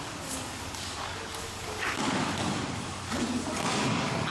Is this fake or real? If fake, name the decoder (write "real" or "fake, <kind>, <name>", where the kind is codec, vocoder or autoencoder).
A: fake, codec, DAC